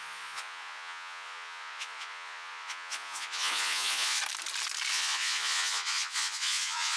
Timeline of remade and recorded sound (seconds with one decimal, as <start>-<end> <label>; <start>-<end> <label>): 0.0-4.2 remade; 4.2-4.9 recorded; 4.9-7.0 remade